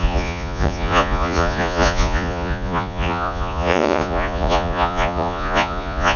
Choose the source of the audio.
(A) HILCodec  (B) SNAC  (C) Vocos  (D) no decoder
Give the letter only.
C